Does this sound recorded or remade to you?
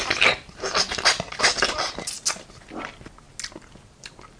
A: recorded